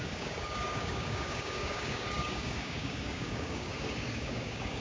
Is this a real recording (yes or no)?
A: no